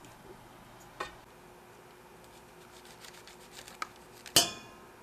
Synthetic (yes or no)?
no